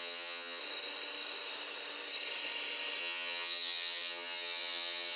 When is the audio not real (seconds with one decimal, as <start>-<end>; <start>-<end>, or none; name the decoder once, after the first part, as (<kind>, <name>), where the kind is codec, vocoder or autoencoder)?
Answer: 0.0-0.6 (vocoder, HiFi-GAN); 3.0-5.2

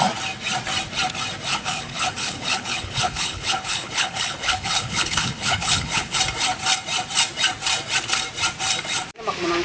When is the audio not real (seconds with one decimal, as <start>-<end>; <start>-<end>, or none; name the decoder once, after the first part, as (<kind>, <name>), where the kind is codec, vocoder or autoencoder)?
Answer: 1.5-6.2 (codec, HILCodec)